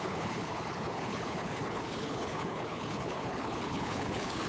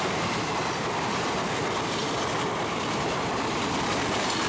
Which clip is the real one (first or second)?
second